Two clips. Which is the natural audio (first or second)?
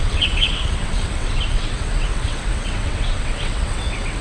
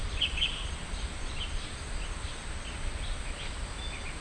second